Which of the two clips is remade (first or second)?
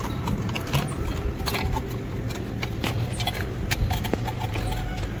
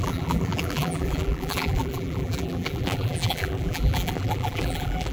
second